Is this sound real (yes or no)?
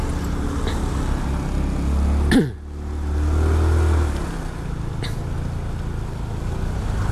yes